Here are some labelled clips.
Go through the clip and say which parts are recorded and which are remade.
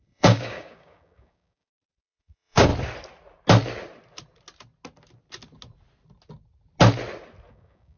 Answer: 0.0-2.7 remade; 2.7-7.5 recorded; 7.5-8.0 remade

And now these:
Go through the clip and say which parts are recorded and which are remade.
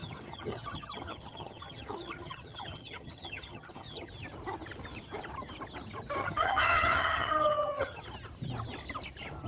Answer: 0.0-4.1 remade; 4.1-6.2 recorded; 6.2-8.0 remade; 8.0-9.5 recorded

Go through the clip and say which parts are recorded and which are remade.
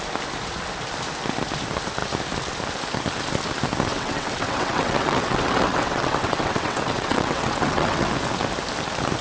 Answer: 0.0-3.9 recorded; 3.9-8.1 remade; 8.1-9.2 recorded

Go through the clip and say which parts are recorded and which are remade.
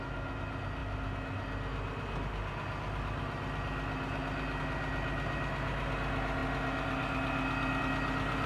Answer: 0.0-8.5 recorded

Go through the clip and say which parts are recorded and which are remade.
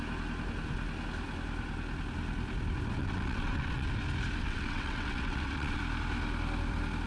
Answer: 0.0-3.0 recorded; 3.0-3.9 remade; 3.9-4.4 recorded; 4.4-5.8 remade; 5.8-7.1 recorded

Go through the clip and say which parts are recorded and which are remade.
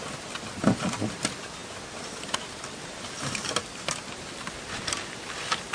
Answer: 0.0-5.7 recorded